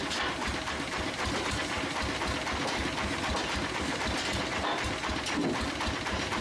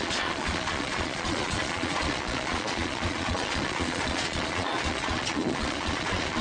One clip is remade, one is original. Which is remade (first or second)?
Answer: second